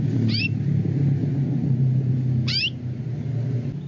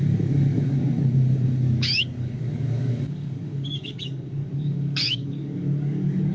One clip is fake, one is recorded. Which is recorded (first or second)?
first